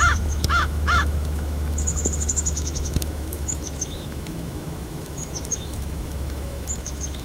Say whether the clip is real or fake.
fake